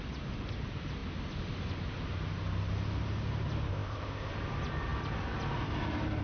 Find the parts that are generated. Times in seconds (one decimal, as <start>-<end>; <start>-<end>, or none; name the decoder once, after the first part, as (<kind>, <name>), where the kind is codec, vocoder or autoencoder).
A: 3.7-4.3 (codec, ZipCodec)